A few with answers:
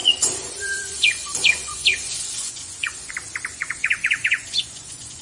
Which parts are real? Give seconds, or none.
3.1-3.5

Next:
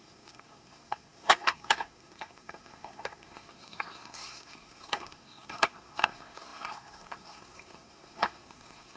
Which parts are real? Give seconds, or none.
none

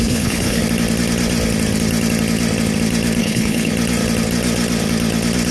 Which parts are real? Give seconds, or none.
0.6-3.2; 3.7-5.5

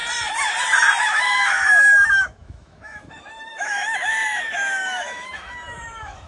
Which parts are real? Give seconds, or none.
0.0-1.0

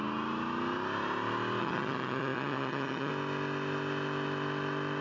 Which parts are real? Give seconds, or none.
0.0-1.6; 3.1-5.0

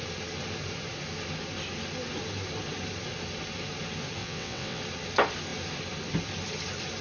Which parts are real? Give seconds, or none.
0.0-4.2; 4.8-7.0

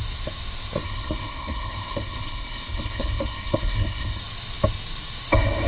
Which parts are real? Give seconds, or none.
0.0-0.8; 4.2-5.7